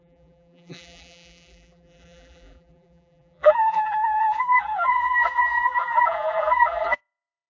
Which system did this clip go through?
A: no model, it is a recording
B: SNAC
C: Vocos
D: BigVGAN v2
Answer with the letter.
D